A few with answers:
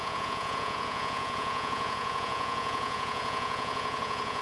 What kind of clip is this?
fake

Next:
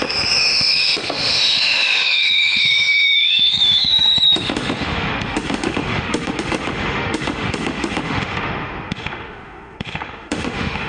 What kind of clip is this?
fake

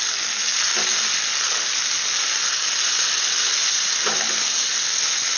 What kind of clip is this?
real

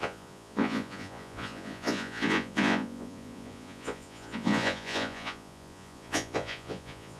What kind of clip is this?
fake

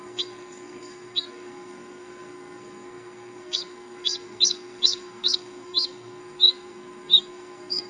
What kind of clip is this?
fake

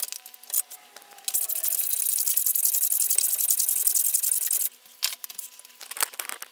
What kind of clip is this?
real